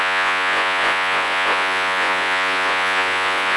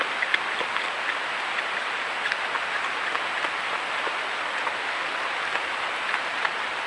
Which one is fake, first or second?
first